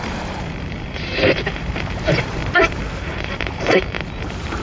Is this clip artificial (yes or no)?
yes